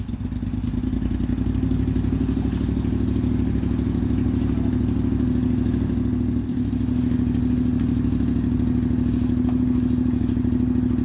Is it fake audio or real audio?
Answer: real